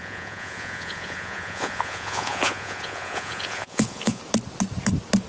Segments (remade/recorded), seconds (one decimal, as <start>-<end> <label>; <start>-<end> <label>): 0.0-4.2 remade; 4.2-5.3 recorded